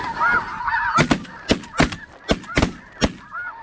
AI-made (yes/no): no